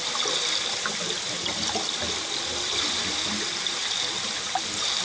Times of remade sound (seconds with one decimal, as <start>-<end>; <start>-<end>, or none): 0.0-3.0